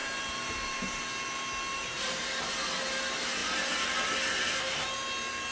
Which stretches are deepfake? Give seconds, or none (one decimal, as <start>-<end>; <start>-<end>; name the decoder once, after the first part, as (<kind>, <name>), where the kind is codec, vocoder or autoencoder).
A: 0.0-1.0 (vocoder, BigVGAN v2); 1.9-2.4